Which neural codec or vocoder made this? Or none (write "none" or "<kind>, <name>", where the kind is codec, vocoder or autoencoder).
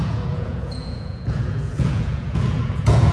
vocoder, Vocos